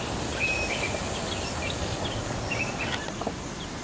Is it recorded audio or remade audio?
recorded